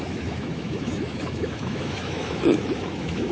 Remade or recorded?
remade